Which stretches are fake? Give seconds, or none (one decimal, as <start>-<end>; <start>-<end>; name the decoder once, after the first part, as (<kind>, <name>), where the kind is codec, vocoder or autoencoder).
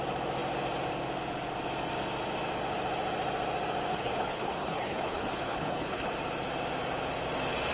3.9-6.1 (codec, HILCodec)